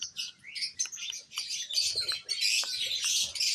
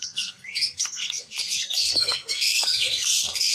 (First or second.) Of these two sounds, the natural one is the first